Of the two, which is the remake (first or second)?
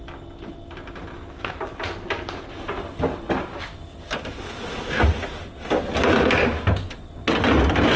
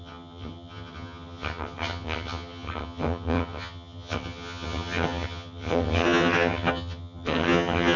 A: second